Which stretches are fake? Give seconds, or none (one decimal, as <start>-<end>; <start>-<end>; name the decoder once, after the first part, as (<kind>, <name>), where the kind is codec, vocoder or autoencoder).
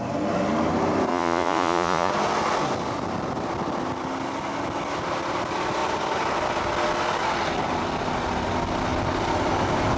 1.1-2.1 (vocoder, Vocos)